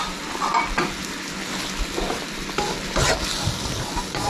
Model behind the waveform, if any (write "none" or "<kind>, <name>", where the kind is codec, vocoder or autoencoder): none